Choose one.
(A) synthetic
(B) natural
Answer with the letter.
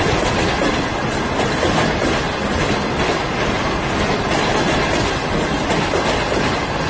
B